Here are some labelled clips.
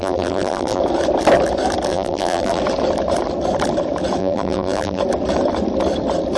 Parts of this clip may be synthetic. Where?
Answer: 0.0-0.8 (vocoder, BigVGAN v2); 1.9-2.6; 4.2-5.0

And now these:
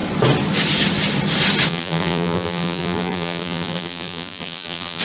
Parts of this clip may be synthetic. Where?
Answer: 1.7-5.0 (vocoder, BigVGAN v2)

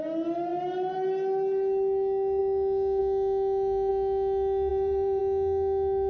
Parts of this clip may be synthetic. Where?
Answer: 4.7-5.2 (vocoder, BigVGAN v2)

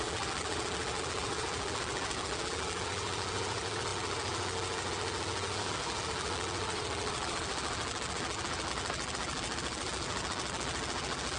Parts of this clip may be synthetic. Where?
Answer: 0.0-11.4 (vocoder, BigVGAN v2)

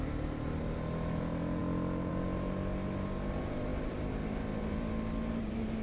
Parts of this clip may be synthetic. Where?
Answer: 3.7-4.9 (vocoder, BigVGAN v2)

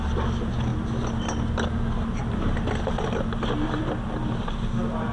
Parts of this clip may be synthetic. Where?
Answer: none

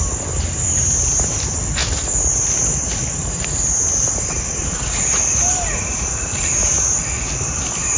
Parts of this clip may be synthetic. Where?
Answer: 1.8-6.6 (vocoder, BigVGAN v2)

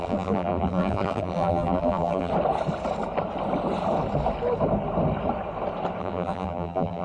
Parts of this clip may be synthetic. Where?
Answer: 0.0-2.3 (vocoder, BigVGAN v2); 6.0-7.0